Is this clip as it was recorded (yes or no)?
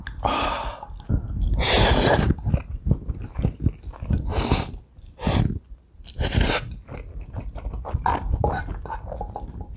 yes